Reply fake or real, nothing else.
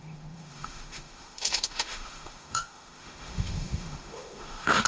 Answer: fake